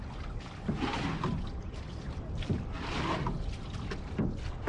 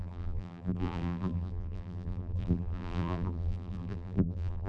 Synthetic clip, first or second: second